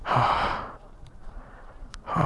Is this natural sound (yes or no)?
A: no